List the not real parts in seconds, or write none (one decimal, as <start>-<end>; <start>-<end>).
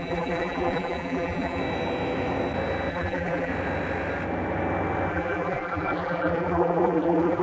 0.0-1.6; 2.9-3.5; 5.1-7.4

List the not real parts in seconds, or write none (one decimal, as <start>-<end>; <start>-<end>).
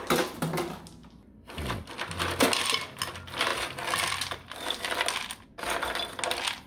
none